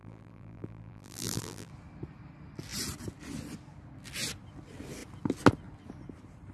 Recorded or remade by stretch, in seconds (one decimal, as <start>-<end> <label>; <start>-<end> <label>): 0.0-1.7 remade; 1.7-6.5 recorded